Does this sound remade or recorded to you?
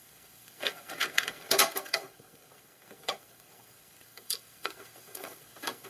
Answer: remade